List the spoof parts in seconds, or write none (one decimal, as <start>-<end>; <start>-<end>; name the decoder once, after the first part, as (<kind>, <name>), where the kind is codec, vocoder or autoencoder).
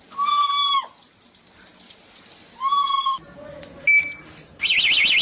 none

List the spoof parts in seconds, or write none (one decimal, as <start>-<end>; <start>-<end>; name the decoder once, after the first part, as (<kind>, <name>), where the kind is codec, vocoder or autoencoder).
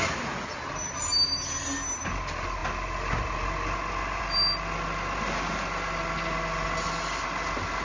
none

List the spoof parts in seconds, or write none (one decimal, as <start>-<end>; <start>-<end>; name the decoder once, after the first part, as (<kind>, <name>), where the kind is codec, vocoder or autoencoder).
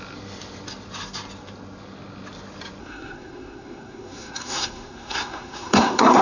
2.8-6.2 (codec, SNAC)